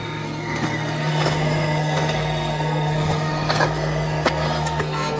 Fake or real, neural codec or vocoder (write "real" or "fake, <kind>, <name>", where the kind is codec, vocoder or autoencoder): fake, codec, SNAC